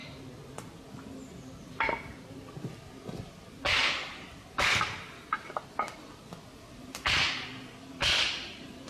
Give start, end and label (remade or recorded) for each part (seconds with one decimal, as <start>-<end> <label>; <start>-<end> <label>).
0.0-3.8 recorded; 3.8-8.9 remade